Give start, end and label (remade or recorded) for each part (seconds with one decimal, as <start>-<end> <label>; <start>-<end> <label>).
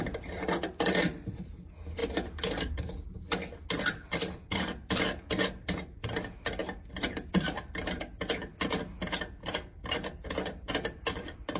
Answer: 0.0-11.6 recorded